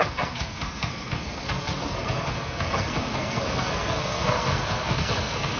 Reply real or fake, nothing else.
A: fake